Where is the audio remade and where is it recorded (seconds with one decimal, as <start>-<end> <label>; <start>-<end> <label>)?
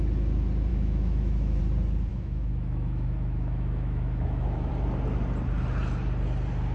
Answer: 0.0-0.7 recorded; 0.7-1.6 remade; 1.6-2.1 recorded; 2.1-4.7 remade; 4.7-6.7 recorded